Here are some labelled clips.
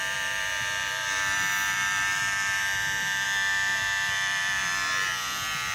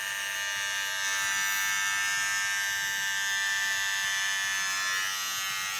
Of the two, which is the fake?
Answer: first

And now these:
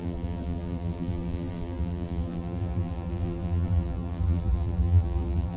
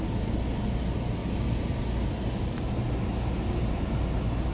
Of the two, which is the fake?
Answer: first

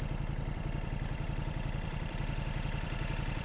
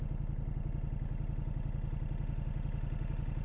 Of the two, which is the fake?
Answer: first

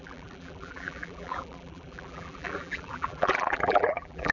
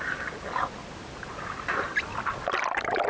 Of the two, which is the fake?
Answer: first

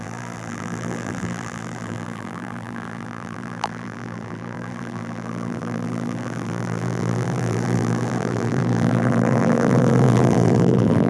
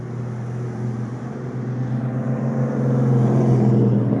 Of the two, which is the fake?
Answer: first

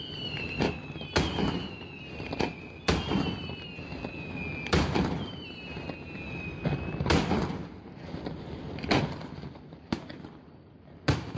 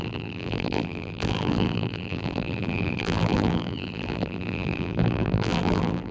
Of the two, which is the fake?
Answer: second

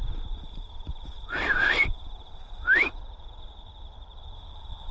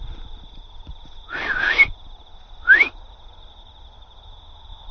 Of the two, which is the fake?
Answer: first